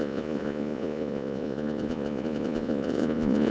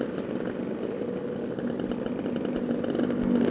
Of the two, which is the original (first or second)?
second